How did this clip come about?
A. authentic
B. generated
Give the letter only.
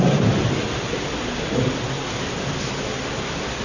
A